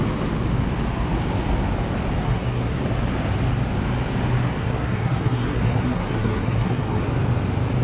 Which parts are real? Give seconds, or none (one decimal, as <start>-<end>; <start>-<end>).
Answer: 0.0-2.2; 2.8-4.6; 7.0-7.8